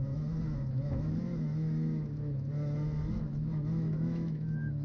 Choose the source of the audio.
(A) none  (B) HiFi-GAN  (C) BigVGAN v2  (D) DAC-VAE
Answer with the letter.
D